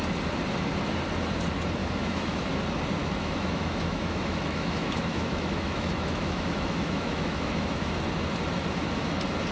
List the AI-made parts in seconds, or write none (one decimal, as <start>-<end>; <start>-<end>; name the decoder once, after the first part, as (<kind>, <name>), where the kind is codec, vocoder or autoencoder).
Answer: 1.8-2.5 (autoencoder, DAC-VAE); 3.0-8.0